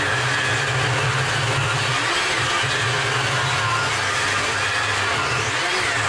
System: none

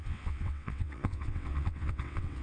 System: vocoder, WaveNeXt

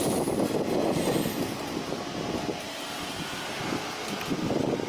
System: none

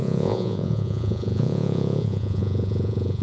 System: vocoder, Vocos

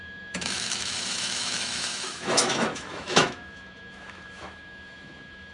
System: autoencoder, DAC-VAE